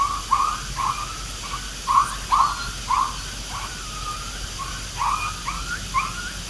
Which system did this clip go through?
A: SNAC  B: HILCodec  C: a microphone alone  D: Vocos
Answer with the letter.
C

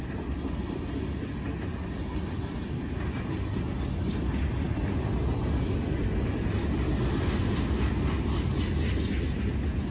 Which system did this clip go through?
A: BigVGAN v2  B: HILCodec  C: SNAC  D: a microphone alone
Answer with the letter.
D